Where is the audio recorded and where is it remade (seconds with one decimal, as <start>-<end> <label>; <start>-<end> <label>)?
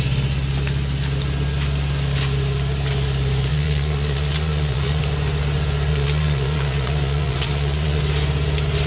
0.0-3.5 recorded; 3.5-5.0 remade; 5.0-5.9 recorded; 5.9-8.0 remade; 8.0-8.9 recorded